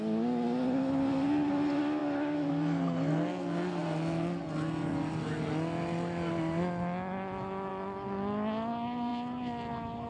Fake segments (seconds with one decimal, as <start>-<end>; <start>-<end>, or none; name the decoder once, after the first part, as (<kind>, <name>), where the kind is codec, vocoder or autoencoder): none